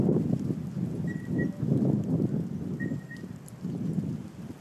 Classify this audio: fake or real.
real